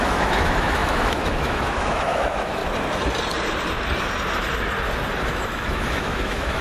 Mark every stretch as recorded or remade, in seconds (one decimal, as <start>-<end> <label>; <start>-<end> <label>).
0.0-2.6 remade; 2.6-5.3 recorded; 5.3-6.6 remade